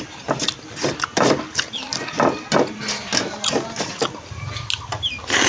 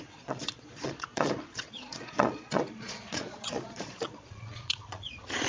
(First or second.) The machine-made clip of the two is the second